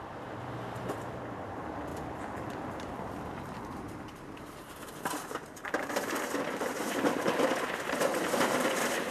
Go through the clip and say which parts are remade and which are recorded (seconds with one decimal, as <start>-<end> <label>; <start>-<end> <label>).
0.0-1.9 remade; 1.9-2.9 recorded; 2.9-9.1 remade

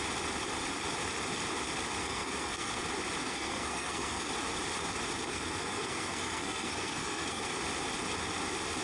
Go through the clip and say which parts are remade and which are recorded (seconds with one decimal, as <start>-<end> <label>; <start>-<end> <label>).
0.0-2.0 recorded; 2.0-2.8 remade; 2.8-3.2 recorded; 3.2-4.3 remade; 4.3-5.3 recorded; 5.3-7.6 remade; 7.6-8.8 recorded

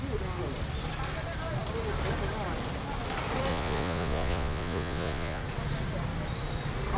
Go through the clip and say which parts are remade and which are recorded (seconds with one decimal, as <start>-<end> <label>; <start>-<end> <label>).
0.0-3.5 recorded; 3.5-5.4 remade; 5.4-7.0 recorded

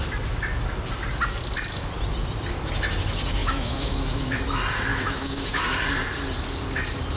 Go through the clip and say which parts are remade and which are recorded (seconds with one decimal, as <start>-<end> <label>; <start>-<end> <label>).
0.0-3.4 recorded; 3.4-4.4 remade; 4.4-4.9 recorded; 4.9-5.6 remade; 5.6-7.2 recorded

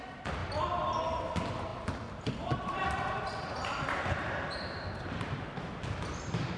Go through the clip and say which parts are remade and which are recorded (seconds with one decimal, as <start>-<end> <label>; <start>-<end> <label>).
0.0-0.4 recorded; 0.4-1.0 remade; 1.0-1.7 recorded; 1.7-3.3 remade; 3.3-6.6 recorded

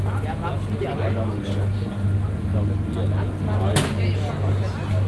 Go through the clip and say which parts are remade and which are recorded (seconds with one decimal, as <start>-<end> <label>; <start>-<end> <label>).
0.0-5.1 recorded

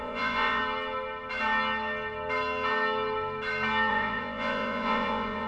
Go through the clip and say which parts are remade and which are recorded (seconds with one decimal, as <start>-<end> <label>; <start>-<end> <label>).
0.0-0.6 remade; 0.6-3.9 recorded; 3.9-5.5 remade